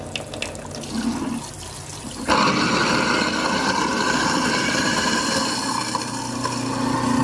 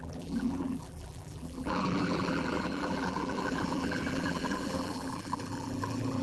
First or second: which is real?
first